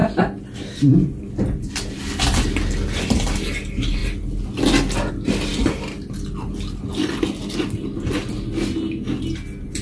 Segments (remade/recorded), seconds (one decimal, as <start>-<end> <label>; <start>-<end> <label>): 0.0-9.8 recorded

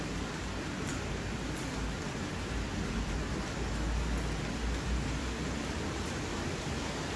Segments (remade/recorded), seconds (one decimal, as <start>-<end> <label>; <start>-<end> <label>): 0.0-7.2 recorded

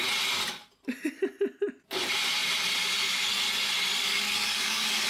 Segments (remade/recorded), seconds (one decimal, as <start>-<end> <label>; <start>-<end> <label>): 0.0-4.0 recorded; 4.0-5.1 remade

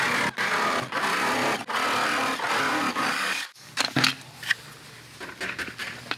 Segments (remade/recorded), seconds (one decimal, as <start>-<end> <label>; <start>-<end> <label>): 0.0-2.9 recorded; 2.9-4.0 remade; 4.0-6.2 recorded

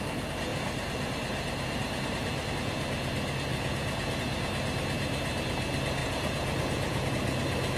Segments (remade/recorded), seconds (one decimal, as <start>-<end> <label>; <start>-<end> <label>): 0.0-3.5 recorded; 3.5-4.2 remade; 4.2-6.0 recorded; 6.0-7.1 remade; 7.1-7.8 recorded

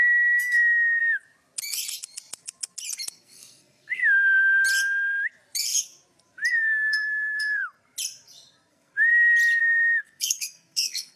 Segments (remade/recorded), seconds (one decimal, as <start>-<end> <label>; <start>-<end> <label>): 0.0-1.0 remade; 1.0-3.1 recorded; 3.1-4.0 remade; 4.0-6.5 recorded; 6.5-7.6 remade; 7.6-8.7 recorded; 8.7-9.1 remade; 9.1-9.6 recorded; 9.6-11.2 remade

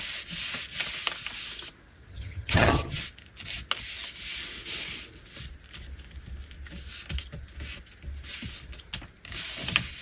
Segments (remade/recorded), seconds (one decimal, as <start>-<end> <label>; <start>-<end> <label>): 0.0-2.1 recorded; 2.1-3.0 remade; 3.0-10.0 recorded